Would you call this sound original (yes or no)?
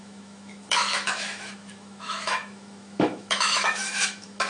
no